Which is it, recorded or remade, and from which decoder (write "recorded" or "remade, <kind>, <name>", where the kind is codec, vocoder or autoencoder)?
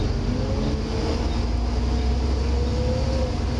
recorded